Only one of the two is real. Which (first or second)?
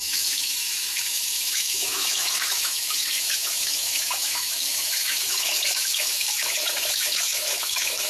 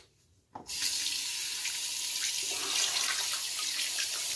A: second